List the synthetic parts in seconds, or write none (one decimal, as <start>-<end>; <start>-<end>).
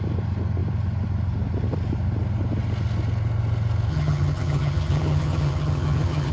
3.9-6.3